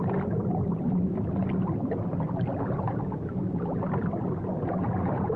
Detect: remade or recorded recorded